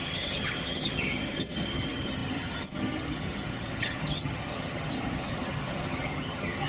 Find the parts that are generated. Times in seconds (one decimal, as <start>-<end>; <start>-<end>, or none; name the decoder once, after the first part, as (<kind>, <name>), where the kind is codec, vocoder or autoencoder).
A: 0.0-6.7 (vocoder, HiFi-GAN)

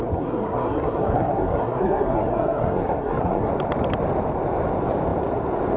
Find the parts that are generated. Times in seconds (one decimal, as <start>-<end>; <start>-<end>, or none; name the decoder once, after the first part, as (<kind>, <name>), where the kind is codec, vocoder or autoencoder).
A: 0.0-3.5 (codec, SNAC)

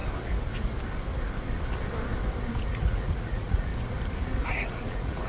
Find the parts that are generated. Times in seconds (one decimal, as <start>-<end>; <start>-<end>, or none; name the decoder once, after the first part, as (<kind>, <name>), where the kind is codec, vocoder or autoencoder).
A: 2.5-3.7 (vocoder, Vocos); 4.5-5.3

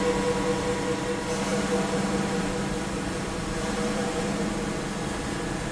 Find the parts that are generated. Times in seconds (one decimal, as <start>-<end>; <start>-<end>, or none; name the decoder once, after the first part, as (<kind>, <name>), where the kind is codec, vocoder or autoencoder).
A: 1.5-4.7 (vocoder, BigVGAN v2)

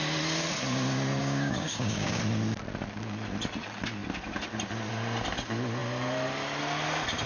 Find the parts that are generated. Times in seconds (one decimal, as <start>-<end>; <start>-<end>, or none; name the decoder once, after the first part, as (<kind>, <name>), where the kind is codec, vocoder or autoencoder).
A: 1.2-2.2 (codec, DAC)